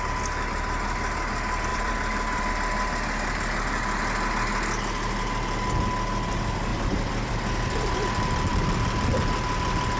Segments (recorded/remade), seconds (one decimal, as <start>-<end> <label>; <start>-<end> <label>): 0.0-1.7 recorded; 1.7-2.5 remade; 2.5-6.7 recorded; 6.7-8.1 remade; 8.1-10.0 recorded